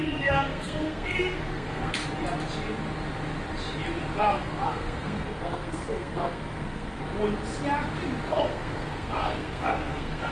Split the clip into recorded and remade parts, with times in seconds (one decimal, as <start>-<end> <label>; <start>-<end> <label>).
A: 0.0-2.0 remade; 2.0-4.2 recorded; 4.2-7.0 remade; 7.0-8.3 recorded; 8.3-10.3 remade